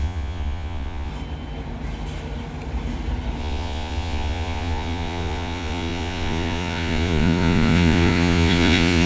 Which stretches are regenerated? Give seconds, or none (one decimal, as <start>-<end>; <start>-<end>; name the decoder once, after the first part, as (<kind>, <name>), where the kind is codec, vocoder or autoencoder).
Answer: 0.0-1.1 (vocoder, Vocos); 3.4-9.1